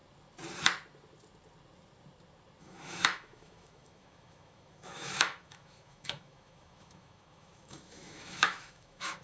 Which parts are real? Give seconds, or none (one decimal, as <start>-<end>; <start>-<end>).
0.0-2.6

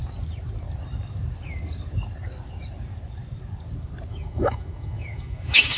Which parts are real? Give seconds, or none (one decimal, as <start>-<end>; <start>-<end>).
0.0-4.1